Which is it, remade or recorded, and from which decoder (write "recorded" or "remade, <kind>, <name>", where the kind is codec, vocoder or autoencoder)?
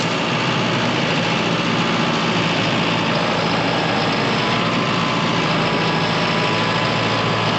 recorded